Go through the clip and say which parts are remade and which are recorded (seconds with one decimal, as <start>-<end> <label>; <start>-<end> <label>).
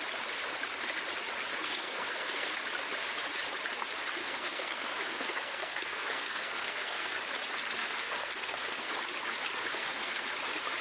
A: 0.0-1.5 recorded; 1.5-2.5 remade; 2.5-4.2 recorded; 4.2-7.1 remade; 7.1-7.8 recorded; 7.8-8.9 remade; 8.9-9.7 recorded; 9.7-10.3 remade; 10.3-10.8 recorded